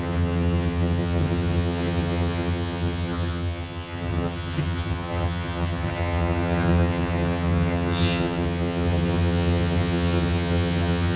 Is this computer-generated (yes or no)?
yes